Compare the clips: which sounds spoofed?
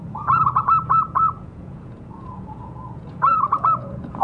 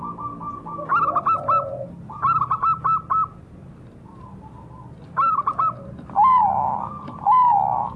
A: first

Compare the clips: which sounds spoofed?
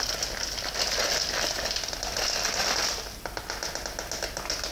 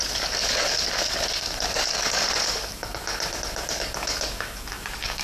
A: second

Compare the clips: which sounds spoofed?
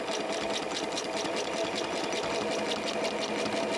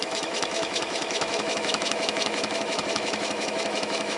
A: second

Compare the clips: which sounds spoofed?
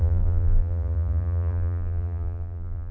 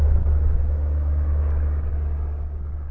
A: first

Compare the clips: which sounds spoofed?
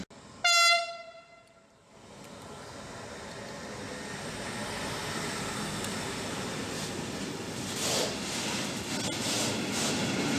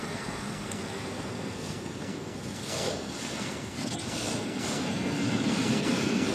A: second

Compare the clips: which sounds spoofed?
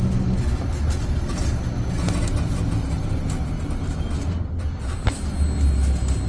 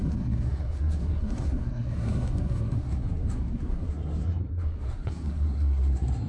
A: second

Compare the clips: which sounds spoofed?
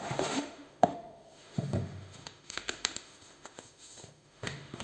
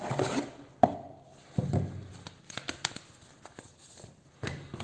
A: first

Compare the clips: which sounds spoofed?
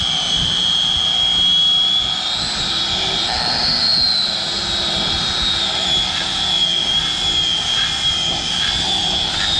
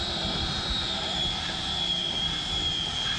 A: second